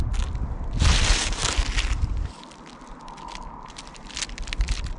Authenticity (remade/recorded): recorded